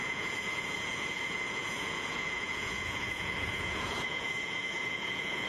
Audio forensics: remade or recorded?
remade